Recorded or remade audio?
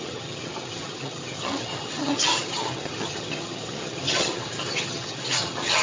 remade